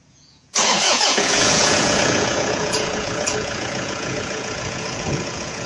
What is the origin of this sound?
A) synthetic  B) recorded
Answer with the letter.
A